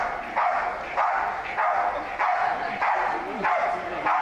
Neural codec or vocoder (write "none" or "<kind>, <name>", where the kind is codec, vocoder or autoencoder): none